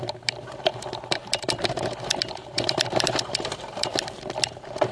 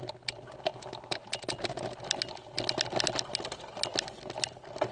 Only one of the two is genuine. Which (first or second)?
second